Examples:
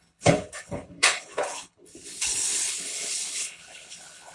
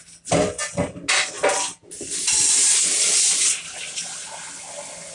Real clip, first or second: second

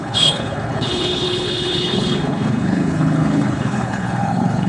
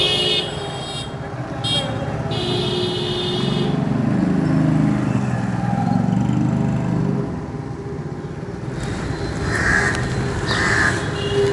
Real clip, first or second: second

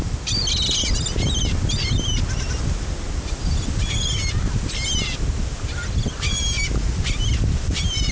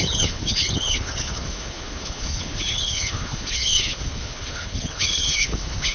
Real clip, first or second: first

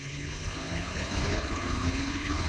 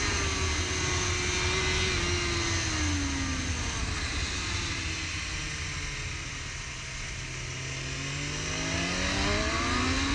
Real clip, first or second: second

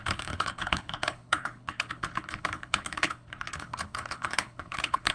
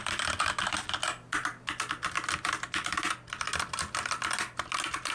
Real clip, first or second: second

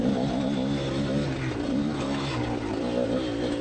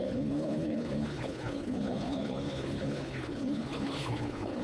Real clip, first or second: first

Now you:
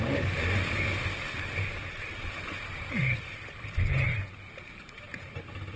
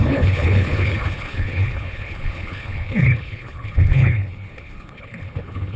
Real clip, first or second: first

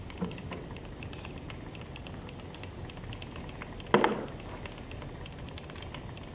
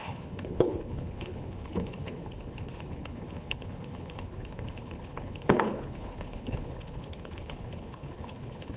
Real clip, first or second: first